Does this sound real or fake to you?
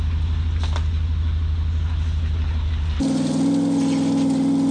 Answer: real